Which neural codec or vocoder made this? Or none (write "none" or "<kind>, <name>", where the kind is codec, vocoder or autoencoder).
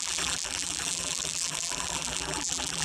vocoder, BigVGAN v2